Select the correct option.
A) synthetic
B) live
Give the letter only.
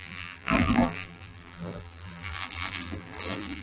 A